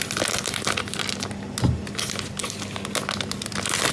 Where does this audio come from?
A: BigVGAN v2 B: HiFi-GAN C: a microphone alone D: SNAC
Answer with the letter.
C